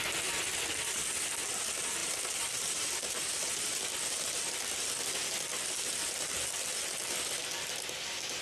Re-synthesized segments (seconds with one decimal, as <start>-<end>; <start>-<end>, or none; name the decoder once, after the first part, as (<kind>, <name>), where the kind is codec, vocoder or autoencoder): 2.0-3.8 (vocoder, BigVGAN v2)

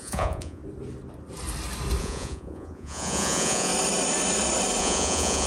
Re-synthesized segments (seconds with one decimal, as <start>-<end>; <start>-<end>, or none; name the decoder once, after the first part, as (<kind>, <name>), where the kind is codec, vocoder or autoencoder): 0.0-0.6 (vocoder, Vocos); 2.0-3.7; 4.8-5.5

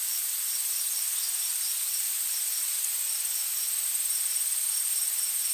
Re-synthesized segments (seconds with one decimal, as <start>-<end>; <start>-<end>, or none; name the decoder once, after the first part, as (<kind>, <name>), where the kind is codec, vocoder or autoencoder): none

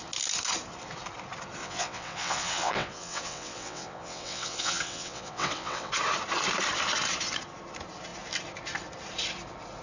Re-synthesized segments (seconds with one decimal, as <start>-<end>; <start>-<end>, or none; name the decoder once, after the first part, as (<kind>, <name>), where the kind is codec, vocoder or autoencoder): 1.6-5.9 (vocoder, WaveNeXt)

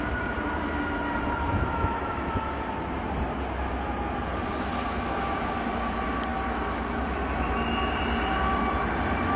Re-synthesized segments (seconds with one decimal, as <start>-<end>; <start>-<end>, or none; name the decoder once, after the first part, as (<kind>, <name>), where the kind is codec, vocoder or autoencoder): 1.7-2.6 (autoencoder, DAC-VAE)